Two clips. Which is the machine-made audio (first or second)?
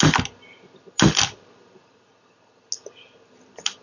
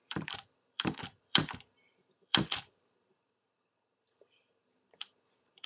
second